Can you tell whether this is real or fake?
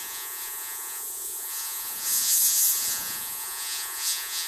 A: fake